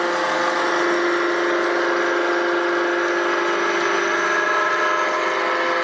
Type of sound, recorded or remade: recorded